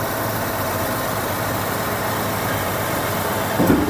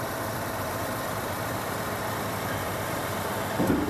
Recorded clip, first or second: first